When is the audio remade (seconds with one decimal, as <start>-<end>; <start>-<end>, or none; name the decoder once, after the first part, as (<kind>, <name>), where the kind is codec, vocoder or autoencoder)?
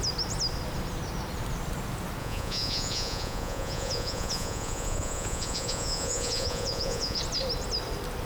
2.2-7.2 (vocoder, Vocos)